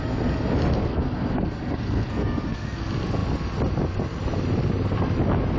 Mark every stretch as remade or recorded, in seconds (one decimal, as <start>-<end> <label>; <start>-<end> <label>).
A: 0.0-0.8 recorded; 0.8-2.8 remade; 2.8-5.6 recorded